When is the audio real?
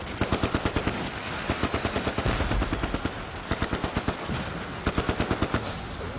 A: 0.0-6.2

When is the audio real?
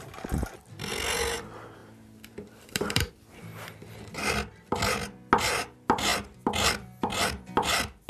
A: 0.0-1.8; 3.1-8.1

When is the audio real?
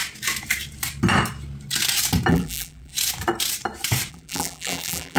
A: 0.0-2.3; 2.9-4.1